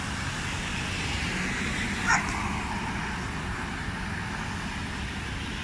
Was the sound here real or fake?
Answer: real